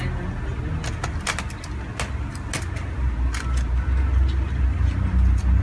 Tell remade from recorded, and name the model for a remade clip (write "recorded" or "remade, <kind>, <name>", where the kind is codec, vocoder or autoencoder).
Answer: recorded